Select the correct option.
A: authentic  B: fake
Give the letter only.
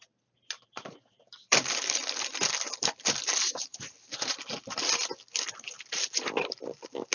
B